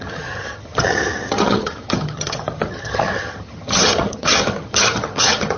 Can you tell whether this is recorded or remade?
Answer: remade